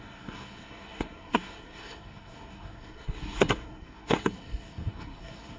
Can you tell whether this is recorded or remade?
remade